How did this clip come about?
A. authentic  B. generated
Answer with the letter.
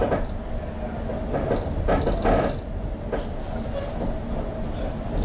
A